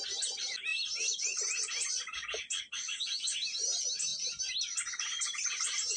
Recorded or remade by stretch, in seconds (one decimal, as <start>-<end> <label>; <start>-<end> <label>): 0.0-0.7 recorded; 0.7-2.6 remade; 2.6-6.0 recorded